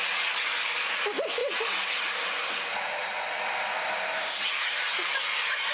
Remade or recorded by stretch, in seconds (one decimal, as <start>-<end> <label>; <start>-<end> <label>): 0.0-1.4 recorded; 1.4-4.8 remade; 4.8-5.7 recorded